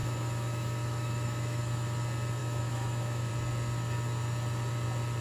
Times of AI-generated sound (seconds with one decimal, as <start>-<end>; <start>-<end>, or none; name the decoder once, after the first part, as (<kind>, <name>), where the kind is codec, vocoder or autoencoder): 0.0-1.6 (autoencoder, DAC-VAE); 2.4-3.3